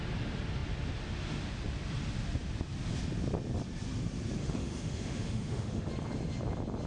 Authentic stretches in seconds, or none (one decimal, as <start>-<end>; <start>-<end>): 0.0-4.4; 5.9-6.9